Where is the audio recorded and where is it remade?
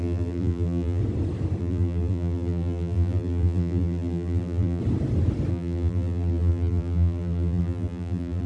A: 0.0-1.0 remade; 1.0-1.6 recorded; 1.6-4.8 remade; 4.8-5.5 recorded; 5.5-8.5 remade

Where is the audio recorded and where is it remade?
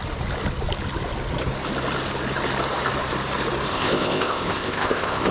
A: 0.0-3.7 recorded; 3.7-5.3 remade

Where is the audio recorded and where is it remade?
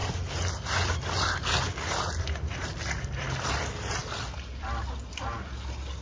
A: 0.0-4.0 recorded; 4.0-5.1 remade; 5.1-6.0 recorded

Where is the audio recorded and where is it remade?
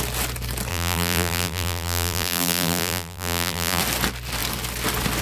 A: 0.0-0.7 recorded; 0.7-3.8 remade; 3.8-5.2 recorded